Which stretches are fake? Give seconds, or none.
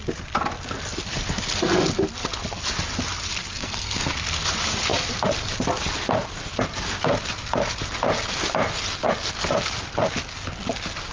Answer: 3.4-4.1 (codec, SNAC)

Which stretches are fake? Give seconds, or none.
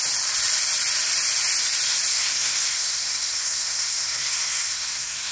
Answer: 2.1-5.3 (codec, SNAC)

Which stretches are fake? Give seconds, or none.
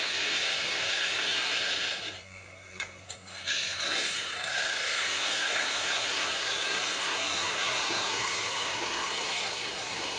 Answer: 0.0-10.2 (codec, SNAC)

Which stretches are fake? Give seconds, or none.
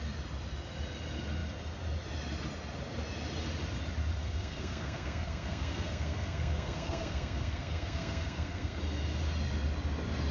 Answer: 4.2-8.8 (codec, SNAC)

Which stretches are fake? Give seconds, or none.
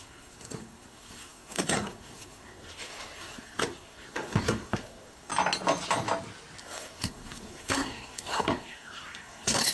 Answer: 0.0-5.3 (codec, SNAC); 6.6-9.7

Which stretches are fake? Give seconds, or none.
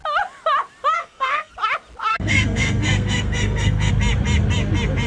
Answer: 1.0-1.5 (codec, SNAC); 2.1-3.9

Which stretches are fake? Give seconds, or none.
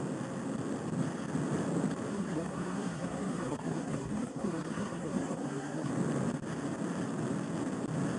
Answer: 2.1-5.9 (codec, SNAC)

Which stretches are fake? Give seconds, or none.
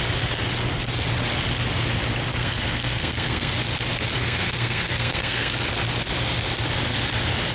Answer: 2.3-3.5 (codec, SNAC); 4.2-5.5